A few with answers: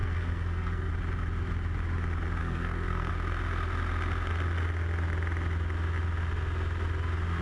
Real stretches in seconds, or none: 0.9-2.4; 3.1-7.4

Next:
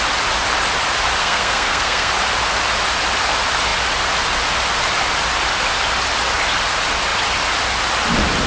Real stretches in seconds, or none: 0.0-1.2; 2.1-8.5

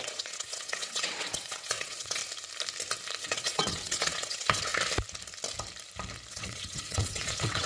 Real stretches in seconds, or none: 2.2-3.2; 4.7-6.3

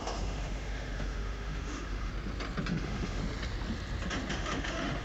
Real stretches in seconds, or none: 2.1-2.7; 3.2-4.3